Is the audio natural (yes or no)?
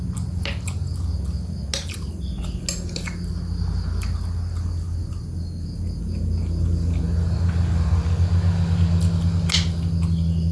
yes